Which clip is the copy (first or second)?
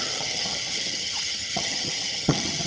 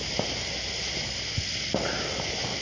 first